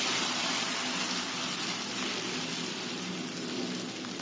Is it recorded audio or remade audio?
recorded